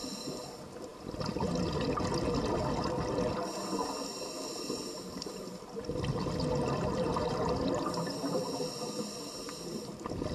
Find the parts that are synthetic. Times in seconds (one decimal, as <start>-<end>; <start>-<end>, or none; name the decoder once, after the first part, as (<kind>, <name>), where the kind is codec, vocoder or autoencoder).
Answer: none